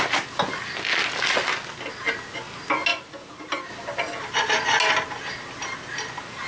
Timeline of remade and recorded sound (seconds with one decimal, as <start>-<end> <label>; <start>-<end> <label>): 0.0-2.9 recorded; 2.9-3.7 remade; 3.7-6.5 recorded